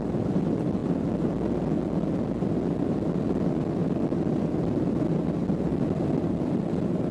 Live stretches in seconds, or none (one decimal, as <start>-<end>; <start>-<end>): 0.0-3.8; 4.4-5.4; 6.0-7.1